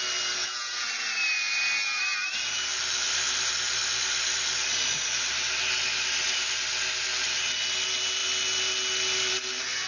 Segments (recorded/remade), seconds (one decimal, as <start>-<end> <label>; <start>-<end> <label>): 0.0-9.9 recorded